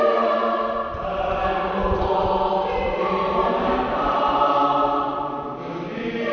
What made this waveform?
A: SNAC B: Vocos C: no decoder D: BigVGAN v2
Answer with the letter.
C